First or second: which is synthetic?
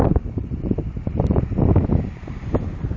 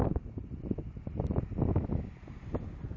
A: first